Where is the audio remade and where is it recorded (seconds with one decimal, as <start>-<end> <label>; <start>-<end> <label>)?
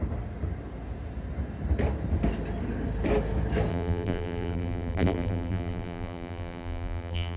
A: 0.0-3.7 recorded; 3.7-7.4 remade